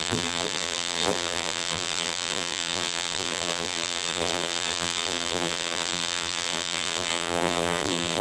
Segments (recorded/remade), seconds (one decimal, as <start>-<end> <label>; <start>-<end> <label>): 0.0-8.2 remade